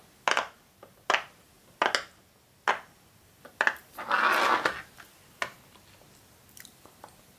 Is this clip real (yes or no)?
yes